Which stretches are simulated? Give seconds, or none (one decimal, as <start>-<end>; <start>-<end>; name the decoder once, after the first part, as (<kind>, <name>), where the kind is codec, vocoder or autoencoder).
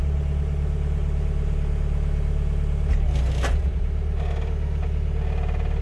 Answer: none